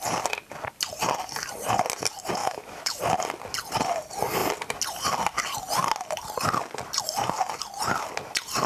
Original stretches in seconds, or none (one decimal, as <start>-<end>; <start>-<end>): 0.0-2.4; 3.0-8.7